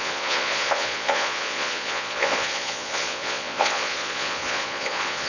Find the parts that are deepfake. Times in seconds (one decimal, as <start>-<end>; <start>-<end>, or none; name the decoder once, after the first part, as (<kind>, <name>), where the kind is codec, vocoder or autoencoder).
0.0-5.3 (vocoder, Vocos)